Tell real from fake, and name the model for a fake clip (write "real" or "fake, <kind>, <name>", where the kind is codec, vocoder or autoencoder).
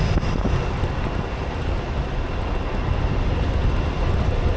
real